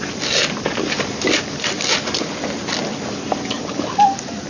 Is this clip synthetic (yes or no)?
no